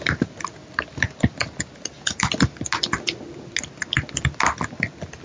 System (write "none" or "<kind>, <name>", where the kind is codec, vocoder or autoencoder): none